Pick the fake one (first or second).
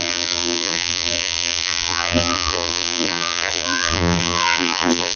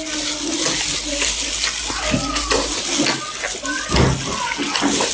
first